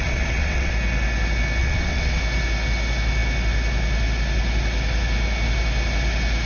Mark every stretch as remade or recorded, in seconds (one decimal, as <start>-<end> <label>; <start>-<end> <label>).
0.0-0.7 remade; 0.7-1.6 recorded; 1.6-2.2 remade; 2.2-6.5 recorded

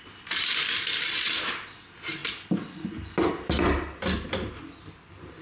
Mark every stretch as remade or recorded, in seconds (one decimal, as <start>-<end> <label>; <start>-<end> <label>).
0.0-5.4 recorded